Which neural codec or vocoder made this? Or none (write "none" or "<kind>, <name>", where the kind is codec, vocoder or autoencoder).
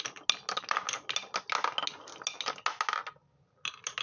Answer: none